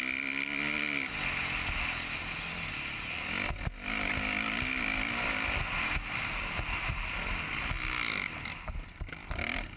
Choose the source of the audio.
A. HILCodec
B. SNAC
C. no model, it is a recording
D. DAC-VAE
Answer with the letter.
C